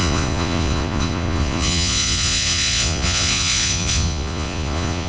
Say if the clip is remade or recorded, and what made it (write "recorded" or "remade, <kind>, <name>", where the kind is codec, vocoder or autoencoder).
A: remade, vocoder, Vocos